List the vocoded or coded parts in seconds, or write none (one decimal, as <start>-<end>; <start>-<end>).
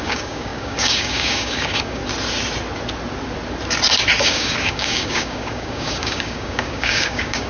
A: 0.0-2.0; 4.2-7.5